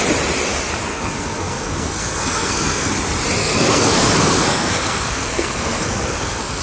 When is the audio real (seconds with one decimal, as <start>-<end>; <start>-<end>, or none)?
0.0-0.9; 2.9-3.4